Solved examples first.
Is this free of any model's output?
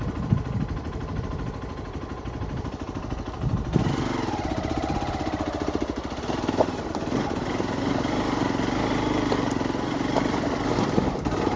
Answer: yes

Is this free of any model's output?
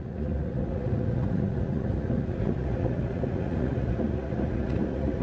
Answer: no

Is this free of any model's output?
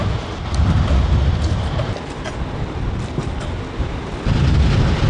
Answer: yes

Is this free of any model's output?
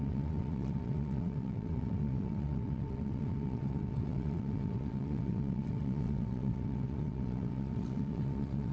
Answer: no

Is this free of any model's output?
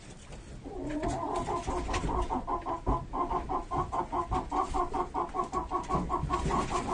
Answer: yes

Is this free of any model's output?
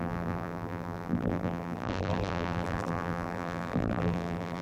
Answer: no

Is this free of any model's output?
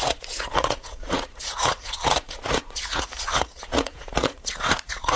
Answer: no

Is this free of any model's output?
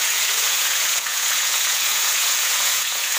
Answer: no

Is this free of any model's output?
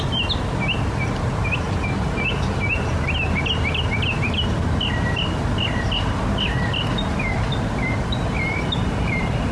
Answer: yes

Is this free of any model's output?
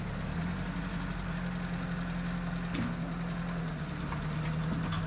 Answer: yes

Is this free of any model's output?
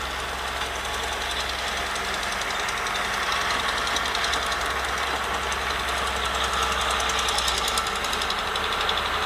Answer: yes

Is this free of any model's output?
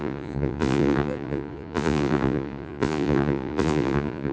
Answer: no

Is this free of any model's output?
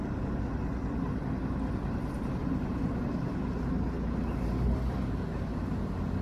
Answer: yes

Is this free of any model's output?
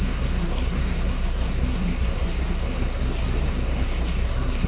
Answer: no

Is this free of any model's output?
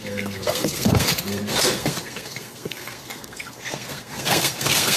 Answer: no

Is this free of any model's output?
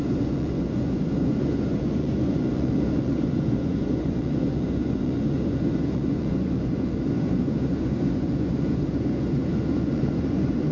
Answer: no